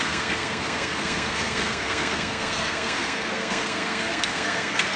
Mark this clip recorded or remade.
remade